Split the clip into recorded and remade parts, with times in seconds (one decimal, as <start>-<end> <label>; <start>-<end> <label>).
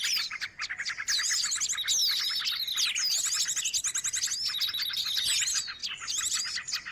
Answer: 0.0-6.9 recorded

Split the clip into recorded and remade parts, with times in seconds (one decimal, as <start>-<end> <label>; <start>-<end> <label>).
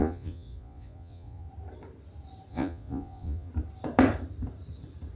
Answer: 0.0-1.5 remade; 1.5-2.5 recorded; 2.5-3.5 remade; 3.5-5.2 recorded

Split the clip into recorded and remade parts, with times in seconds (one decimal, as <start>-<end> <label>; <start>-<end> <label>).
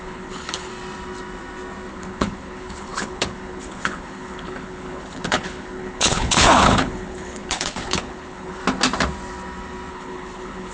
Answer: 0.0-0.7 remade; 0.7-1.9 recorded; 1.9-8.6 remade; 8.6-9.9 recorded; 9.9-10.7 remade